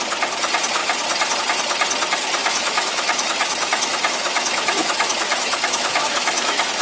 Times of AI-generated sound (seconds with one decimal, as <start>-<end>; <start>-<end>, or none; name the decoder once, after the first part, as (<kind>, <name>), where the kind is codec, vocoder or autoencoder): 2.4-6.8 (autoencoder, DAC-VAE)